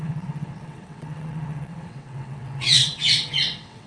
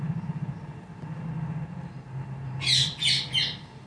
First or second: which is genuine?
second